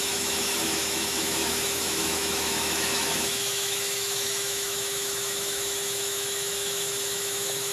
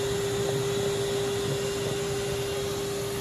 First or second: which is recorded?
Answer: second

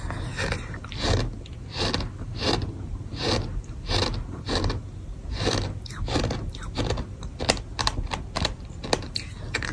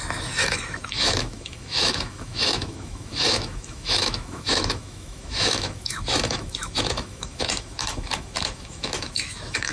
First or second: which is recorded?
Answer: first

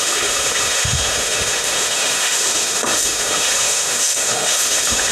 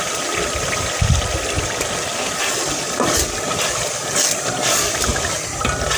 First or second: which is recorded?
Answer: second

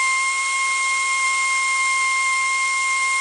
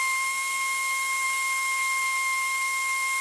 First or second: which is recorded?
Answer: first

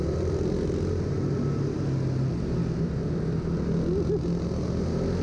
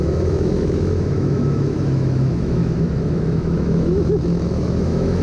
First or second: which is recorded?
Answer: first